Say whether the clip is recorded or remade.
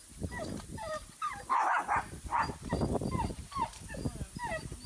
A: recorded